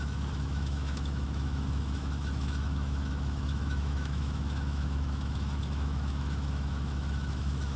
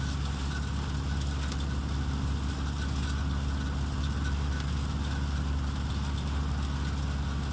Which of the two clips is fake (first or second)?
first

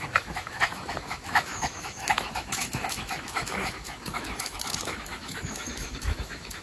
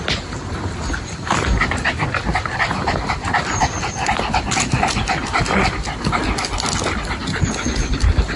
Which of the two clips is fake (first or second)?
first